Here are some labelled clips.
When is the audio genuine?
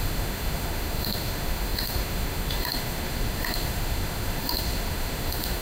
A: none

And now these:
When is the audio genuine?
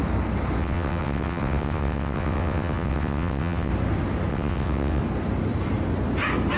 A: 0.0-0.6; 3.7-4.3; 5.0-6.6